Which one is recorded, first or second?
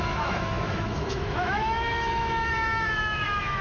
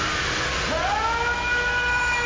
second